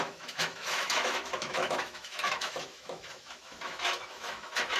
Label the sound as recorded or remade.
remade